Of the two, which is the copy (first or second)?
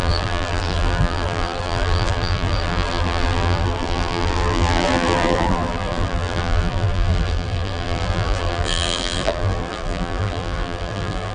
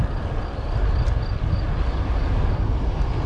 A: first